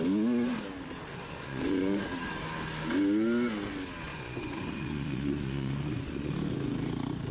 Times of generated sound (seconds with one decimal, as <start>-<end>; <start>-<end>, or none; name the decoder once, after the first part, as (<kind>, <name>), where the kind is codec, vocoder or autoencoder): 1.1-2.0 (vocoder, Vocos); 4.1-6.3